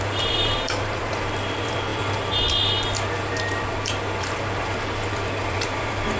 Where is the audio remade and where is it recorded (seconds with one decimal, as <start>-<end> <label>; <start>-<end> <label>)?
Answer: 0.0-1.9 remade; 1.9-4.2 recorded; 4.2-6.2 remade